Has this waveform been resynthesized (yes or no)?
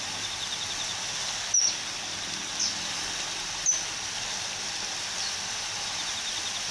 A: no